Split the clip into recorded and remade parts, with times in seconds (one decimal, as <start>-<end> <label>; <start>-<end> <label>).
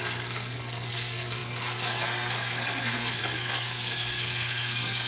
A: 0.0-5.1 remade